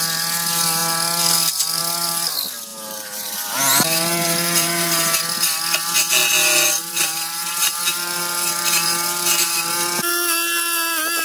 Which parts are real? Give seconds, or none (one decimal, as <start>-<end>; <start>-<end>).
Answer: 0.0-2.7; 5.2-6.8; 10.0-11.2